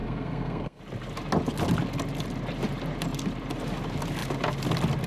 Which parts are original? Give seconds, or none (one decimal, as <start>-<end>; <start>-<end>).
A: 0.8-5.1